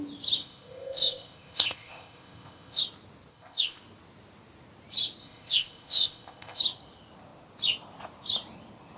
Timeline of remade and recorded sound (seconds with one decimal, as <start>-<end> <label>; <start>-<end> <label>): 0.0-0.4 recorded; 0.4-2.8 remade; 2.8-3.3 recorded; 3.3-3.8 remade; 3.8-5.2 recorded; 5.2-6.6 remade; 6.6-9.0 recorded